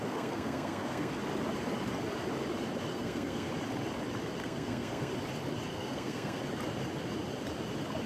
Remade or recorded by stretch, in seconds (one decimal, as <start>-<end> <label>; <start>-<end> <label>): 0.0-1.2 remade; 1.2-2.9 recorded; 2.9-3.5 remade; 3.5-4.4 recorded; 4.4-5.1 remade; 5.1-5.7 recorded; 5.7-6.4 remade; 6.4-8.1 recorded